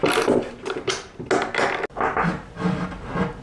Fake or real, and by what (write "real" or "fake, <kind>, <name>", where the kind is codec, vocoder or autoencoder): real